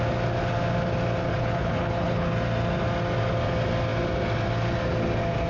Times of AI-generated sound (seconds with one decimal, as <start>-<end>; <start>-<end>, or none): 1.3-2.3